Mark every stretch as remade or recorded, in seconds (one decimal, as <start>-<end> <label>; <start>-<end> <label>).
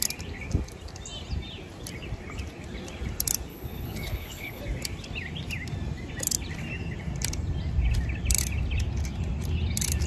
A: 0.0-3.5 recorded; 3.5-4.6 remade; 4.6-10.1 recorded